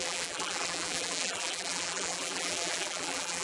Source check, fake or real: fake